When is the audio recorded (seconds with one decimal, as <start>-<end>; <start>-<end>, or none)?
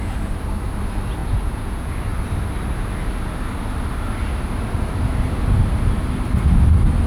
0.0-1.2; 1.9-7.1